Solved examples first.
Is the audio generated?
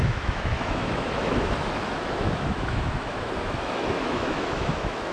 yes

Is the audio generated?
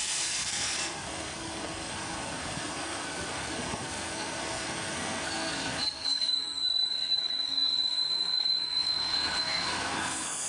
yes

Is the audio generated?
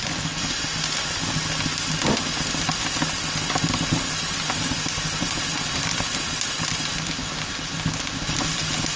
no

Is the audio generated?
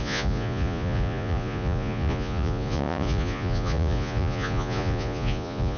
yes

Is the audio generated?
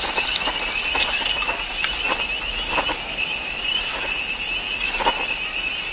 no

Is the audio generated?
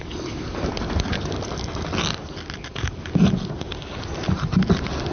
no